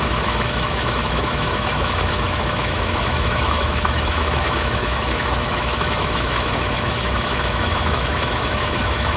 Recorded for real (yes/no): no